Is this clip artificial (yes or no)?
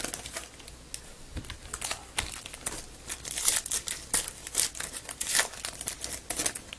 no